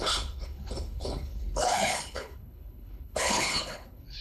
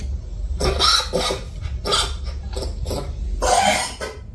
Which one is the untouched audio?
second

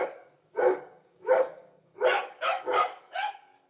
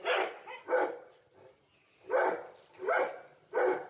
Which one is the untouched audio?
second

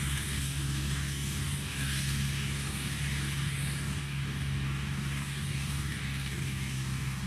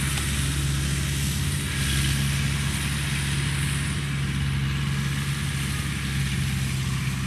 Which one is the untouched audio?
second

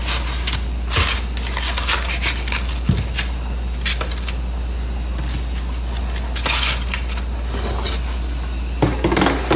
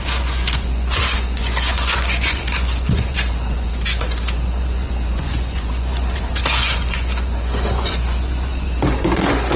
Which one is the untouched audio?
first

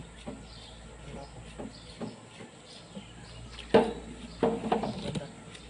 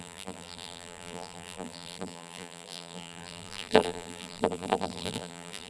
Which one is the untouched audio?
first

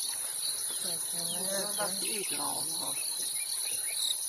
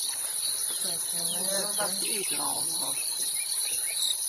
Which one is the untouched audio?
first